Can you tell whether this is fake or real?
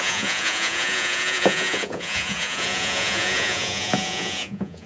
fake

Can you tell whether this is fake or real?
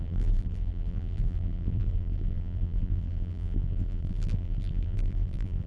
fake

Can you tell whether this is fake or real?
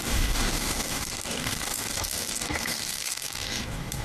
fake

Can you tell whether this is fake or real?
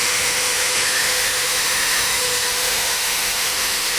fake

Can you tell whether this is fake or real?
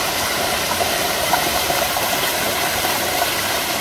fake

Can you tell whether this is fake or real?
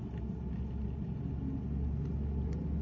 real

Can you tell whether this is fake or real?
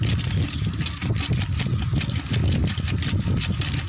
real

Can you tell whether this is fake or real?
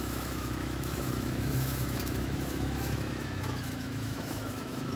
fake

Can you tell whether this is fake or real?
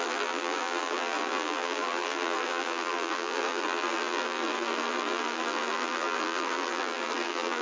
fake